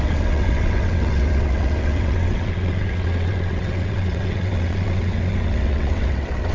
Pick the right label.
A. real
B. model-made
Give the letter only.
B